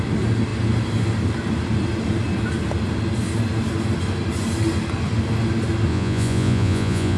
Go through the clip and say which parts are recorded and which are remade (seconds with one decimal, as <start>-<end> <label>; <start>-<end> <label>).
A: 0.0-5.9 recorded; 5.9-7.2 remade